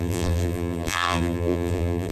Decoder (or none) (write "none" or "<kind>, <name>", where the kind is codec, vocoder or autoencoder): vocoder, BigVGAN v2